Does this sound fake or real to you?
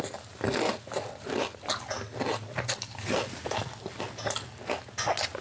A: real